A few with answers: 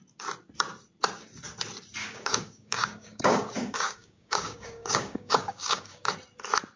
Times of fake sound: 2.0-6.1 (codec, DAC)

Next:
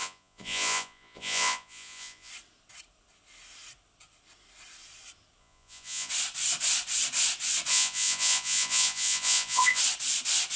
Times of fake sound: 0.0-2.3 (vocoder, Vocos); 5.4-6.1; 7.7-9.8